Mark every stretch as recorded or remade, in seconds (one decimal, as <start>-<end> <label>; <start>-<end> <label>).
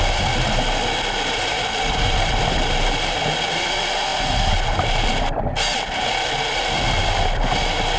0.0-4.1 recorded; 4.1-5.4 remade; 5.4-8.0 recorded